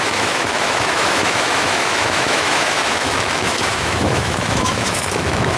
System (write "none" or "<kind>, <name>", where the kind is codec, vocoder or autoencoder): autoencoder, DAC-VAE